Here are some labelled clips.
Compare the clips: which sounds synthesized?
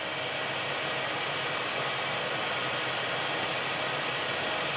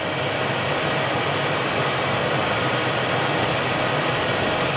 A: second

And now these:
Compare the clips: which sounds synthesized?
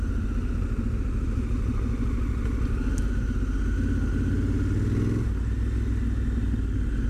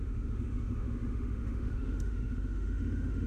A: second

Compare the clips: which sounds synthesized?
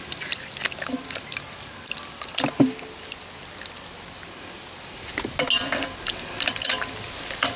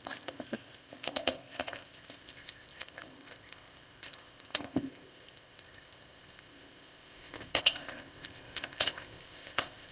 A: second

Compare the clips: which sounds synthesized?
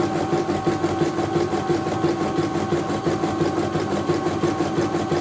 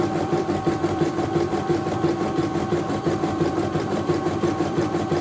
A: second